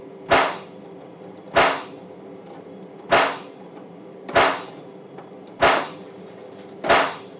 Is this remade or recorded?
recorded